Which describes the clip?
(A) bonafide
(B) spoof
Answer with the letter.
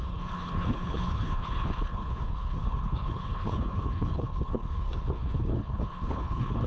B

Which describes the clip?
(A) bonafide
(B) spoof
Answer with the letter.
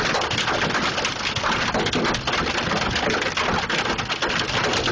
A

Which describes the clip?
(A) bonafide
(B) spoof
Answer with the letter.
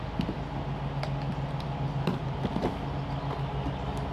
A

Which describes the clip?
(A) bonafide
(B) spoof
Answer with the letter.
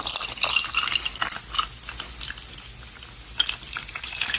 A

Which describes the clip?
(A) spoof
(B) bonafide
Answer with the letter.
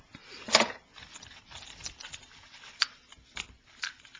A